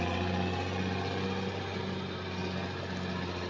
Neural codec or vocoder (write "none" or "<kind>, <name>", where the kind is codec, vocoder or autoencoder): none